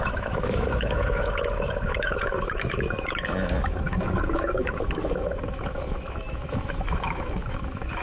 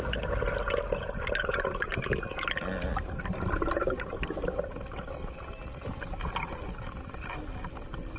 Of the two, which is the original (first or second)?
second